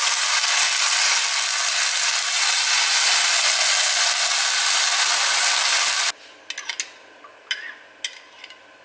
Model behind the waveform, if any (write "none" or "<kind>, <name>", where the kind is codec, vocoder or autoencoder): none